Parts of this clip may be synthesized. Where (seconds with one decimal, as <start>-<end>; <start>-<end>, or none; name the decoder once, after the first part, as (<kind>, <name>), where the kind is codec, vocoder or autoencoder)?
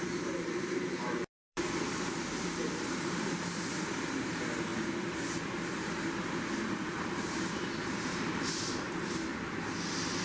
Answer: 0.0-9.3 (vocoder, BigVGAN v2)